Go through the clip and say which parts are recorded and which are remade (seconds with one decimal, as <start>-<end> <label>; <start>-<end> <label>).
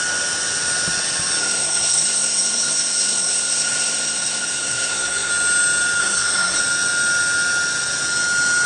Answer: 0.0-1.4 recorded; 1.4-5.3 remade; 5.3-6.0 recorded; 6.0-6.6 remade; 6.6-8.7 recorded